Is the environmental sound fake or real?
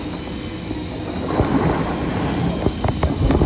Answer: real